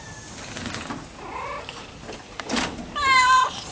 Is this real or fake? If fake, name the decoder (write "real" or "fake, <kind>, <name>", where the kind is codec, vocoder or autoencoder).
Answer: real